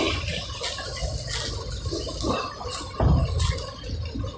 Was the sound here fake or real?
real